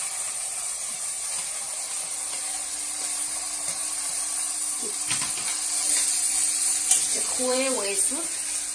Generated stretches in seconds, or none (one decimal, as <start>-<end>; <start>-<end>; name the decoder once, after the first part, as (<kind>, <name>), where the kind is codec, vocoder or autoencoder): 3.8-5.2 (vocoder, BigVGAN v2)